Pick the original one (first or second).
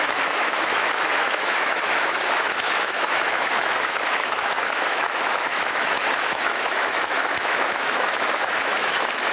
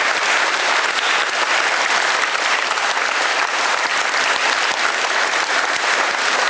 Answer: second